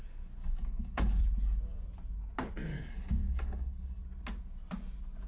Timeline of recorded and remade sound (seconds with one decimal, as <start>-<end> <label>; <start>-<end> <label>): 0.0-1.2 remade; 1.2-2.7 recorded; 2.7-4.0 remade; 4.0-5.3 recorded